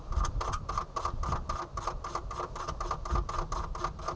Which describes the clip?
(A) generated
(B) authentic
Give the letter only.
B